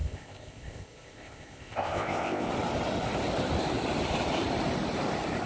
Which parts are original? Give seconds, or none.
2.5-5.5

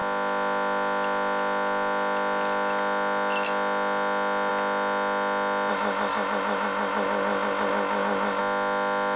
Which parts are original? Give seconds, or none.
0.0-5.7; 8.4-9.2

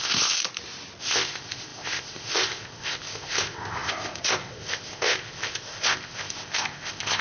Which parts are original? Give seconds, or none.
0.4-1.0

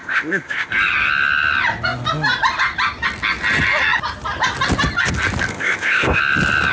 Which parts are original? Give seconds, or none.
0.7-5.5; 6.2-6.7

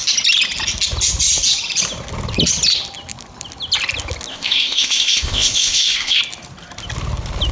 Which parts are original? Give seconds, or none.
0.0-4.3; 6.2-7.5

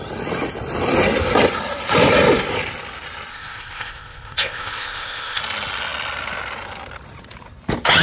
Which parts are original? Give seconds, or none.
0.0-3.3; 5.4-8.0